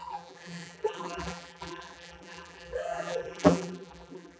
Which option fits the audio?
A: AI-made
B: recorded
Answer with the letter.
A